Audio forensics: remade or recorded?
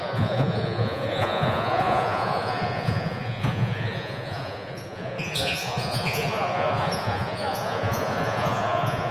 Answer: remade